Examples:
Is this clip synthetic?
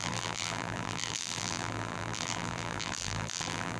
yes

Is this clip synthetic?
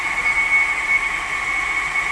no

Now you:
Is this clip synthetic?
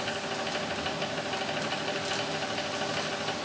no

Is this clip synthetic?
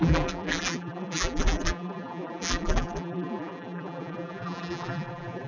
yes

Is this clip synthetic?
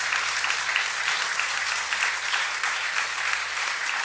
no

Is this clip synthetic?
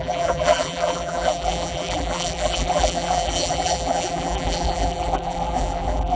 yes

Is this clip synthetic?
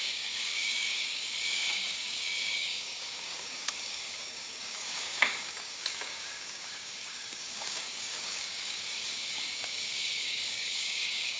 yes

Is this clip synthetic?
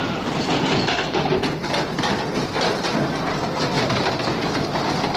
no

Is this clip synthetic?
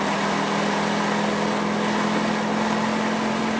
no